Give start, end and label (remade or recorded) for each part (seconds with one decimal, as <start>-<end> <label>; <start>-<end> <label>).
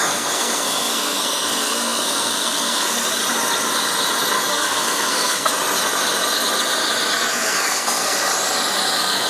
0.0-3.2 remade; 3.2-4.5 recorded; 4.5-5.5 remade; 5.5-7.3 recorded; 7.3-8.3 remade; 8.3-8.9 recorded; 8.9-9.3 remade